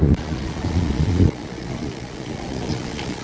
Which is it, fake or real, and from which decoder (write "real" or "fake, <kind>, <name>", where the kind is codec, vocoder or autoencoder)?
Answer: fake, vocoder, Vocos